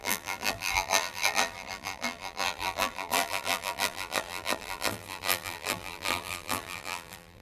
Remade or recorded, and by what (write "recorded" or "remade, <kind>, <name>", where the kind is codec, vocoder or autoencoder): remade, vocoder, BigVGAN v2